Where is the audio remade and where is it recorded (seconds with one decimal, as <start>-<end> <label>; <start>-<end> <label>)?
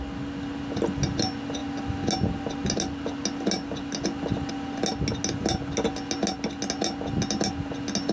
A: 0.0-8.1 recorded